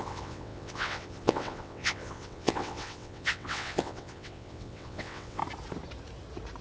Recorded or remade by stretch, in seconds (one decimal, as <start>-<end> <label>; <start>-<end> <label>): 0.0-5.4 remade; 5.4-6.6 recorded